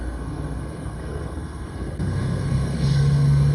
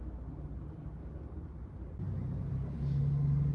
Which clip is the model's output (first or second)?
first